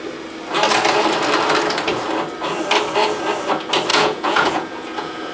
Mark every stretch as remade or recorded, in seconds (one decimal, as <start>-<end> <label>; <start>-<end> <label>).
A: 0.0-3.9 recorded; 3.9-5.3 remade